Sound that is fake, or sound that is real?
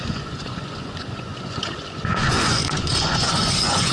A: fake